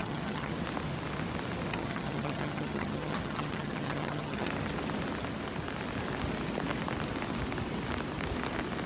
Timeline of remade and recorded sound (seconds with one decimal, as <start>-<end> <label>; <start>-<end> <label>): 0.0-0.5 remade; 0.5-1.7 recorded; 1.7-4.5 remade; 4.5-8.9 recorded